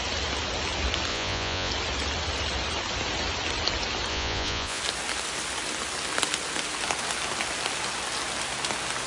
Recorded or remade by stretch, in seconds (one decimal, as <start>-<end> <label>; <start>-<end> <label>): 0.0-1.1 recorded; 1.1-1.7 remade; 1.7-4.1 recorded; 4.1-4.8 remade; 4.8-9.1 recorded